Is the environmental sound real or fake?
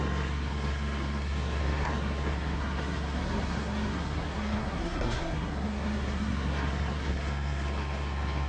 fake